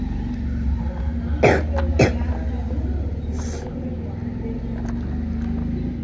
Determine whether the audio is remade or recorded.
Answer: recorded